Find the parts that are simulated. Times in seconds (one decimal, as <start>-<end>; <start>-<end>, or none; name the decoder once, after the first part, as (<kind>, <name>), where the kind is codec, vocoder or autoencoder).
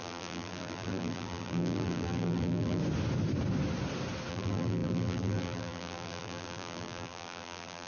0.0-2.8 (vocoder, BigVGAN v2); 4.3-7.9